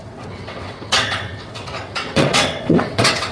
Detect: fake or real fake